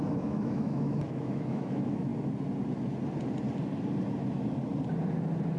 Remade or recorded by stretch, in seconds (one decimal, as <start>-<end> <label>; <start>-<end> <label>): 0.0-2.1 remade; 2.1-5.6 recorded